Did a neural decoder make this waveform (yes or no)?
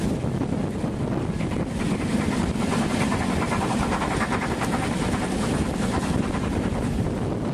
no